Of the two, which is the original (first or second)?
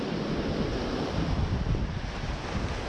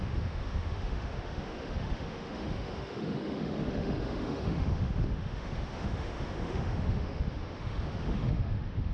first